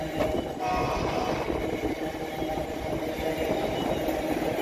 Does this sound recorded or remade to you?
recorded